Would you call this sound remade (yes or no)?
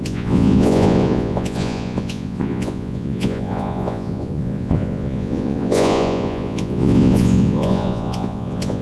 yes